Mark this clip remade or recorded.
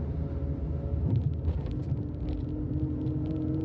recorded